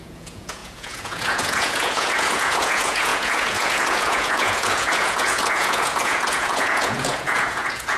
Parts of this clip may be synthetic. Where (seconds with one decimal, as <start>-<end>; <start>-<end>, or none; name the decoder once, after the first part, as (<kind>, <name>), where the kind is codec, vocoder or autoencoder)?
0.0-8.0 (vocoder, Vocos)